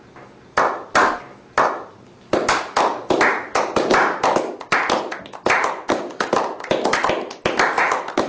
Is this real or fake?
real